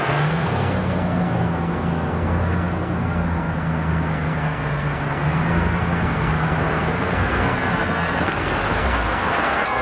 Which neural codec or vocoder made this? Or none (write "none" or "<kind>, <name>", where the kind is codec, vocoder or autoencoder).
codec, SNAC